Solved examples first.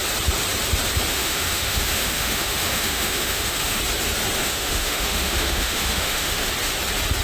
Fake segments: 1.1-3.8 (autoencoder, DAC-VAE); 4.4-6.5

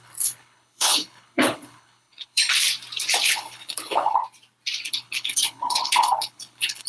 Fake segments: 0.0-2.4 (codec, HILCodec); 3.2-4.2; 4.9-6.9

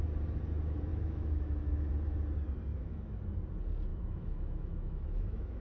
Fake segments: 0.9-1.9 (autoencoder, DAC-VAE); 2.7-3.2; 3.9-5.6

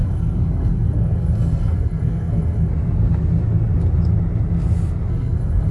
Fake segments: 0.0-2.7 (codec, SNAC); 5.1-5.7

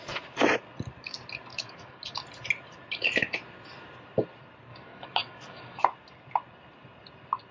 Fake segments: 1.5-2.1 (codec, DAC); 4.7-5.8

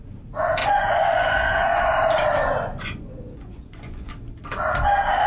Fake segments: 0.6-1.8 (vocoder, Vocos); 2.4-4.1

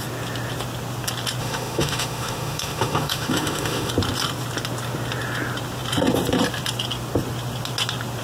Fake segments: 1.4-3.9 (autoencoder, DAC-VAE)